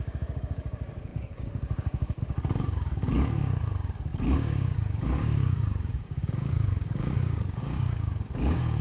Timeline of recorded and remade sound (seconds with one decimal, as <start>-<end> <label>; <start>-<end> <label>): 0.0-8.8 remade